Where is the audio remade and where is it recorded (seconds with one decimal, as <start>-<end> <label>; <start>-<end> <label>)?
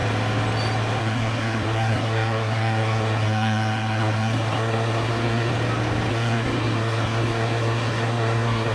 0.0-1.0 recorded; 1.0-5.5 remade; 5.5-6.1 recorded; 6.1-8.7 remade